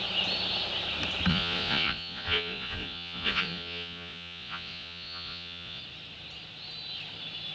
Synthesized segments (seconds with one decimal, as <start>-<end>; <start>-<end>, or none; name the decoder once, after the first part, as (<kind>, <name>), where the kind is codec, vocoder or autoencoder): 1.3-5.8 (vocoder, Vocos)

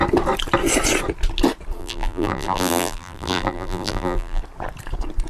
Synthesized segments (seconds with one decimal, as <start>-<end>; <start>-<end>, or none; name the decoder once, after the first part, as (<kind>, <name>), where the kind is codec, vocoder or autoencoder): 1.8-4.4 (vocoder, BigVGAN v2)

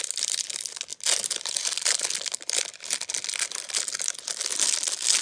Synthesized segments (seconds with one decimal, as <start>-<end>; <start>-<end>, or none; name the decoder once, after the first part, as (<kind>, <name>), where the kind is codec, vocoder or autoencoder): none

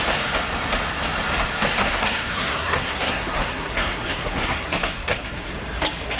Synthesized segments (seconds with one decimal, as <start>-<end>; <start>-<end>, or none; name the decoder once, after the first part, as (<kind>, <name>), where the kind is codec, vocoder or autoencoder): 1.8-5.5 (codec, SNAC)

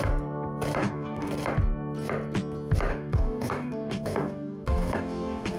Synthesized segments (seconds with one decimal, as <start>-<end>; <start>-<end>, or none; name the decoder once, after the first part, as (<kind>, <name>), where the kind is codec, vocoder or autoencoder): 0.8-1.3 (codec, DAC); 2.9-5.6

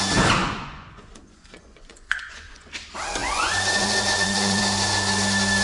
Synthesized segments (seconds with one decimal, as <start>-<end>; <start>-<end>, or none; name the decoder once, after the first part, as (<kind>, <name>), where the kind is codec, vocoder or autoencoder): 0.4-2.7 (vocoder, Vocos); 3.2-4.6

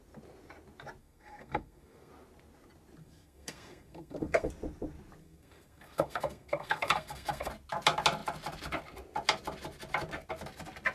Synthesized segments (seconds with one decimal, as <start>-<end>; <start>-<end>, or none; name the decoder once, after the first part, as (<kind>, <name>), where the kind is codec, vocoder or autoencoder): 1.0-2.1 (codec, SNAC); 3.0-4.5; 5.2-7.5

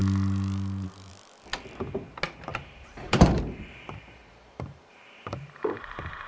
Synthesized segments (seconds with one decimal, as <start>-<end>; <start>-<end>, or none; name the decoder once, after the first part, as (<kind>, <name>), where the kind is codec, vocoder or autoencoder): 2.5-6.3 (vocoder, BigVGAN v2)